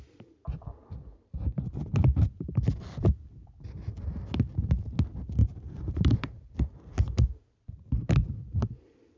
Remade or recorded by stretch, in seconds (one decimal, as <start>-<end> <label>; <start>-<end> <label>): 0.0-0.8 recorded; 0.8-1.9 remade; 1.9-5.4 recorded; 5.4-7.7 remade; 7.7-9.2 recorded